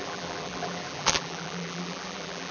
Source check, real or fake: fake